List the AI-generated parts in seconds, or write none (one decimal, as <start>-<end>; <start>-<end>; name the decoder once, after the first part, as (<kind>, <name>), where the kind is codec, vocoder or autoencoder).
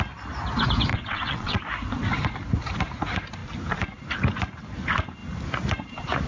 0.9-1.6 (vocoder, WaveNeXt)